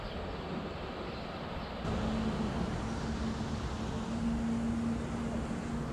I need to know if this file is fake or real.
real